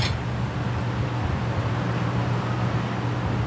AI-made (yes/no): no